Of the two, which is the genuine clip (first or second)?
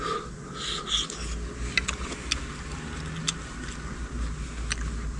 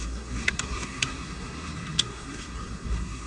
first